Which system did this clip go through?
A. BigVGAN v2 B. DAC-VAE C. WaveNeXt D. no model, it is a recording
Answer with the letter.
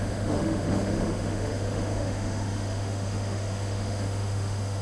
B